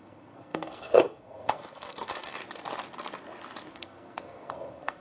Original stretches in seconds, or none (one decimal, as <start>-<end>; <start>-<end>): 2.4-3.7